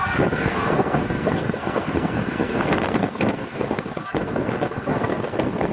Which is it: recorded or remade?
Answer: remade